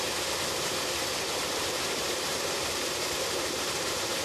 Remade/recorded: remade